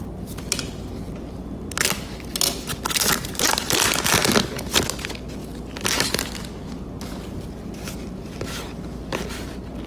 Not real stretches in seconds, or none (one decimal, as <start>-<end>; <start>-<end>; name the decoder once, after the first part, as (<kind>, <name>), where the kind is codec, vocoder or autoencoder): none